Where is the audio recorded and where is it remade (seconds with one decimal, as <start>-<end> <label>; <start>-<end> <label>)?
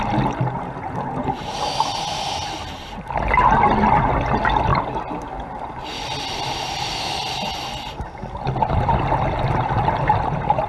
0.0-10.7 recorded